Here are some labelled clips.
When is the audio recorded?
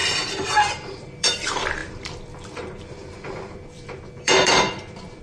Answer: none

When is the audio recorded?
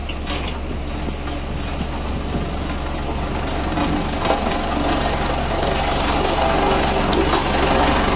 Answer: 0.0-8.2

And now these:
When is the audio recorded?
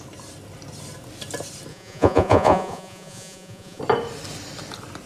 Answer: 0.0-1.7; 3.8-5.1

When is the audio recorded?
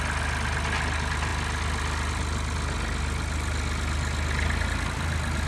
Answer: 0.0-5.5